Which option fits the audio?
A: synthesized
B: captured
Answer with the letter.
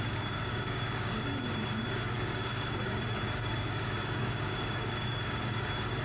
A